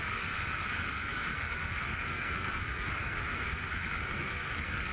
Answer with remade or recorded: remade